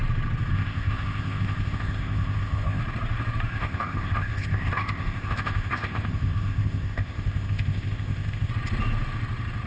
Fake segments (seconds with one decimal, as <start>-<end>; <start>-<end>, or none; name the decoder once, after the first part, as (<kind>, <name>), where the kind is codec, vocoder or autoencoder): 0.5-2.8 (codec, ZipCodec); 3.5-8.5